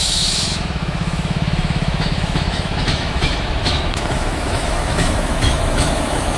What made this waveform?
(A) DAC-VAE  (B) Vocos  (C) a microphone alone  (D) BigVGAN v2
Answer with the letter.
A